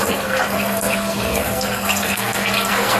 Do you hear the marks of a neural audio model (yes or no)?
yes